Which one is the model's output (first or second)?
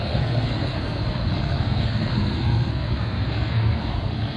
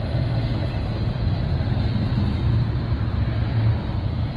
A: first